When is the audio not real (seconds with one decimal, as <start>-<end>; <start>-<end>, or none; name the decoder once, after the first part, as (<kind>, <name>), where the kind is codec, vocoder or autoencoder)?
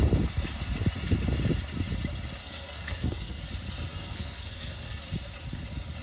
2.4-3.4 (codec, SNAC); 3.9-5.0